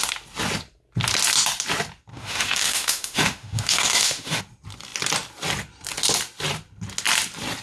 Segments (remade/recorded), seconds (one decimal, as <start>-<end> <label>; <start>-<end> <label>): 0.0-2.1 recorded; 2.1-4.4 remade; 4.4-7.6 recorded